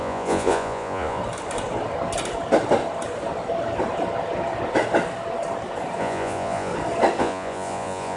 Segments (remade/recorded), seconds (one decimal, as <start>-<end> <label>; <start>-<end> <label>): 0.0-1.2 remade; 1.2-6.0 recorded; 6.0-6.7 remade; 6.7-7.2 recorded; 7.2-8.2 remade